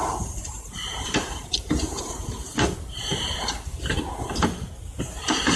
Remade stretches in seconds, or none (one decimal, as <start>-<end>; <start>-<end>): 0.0-5.6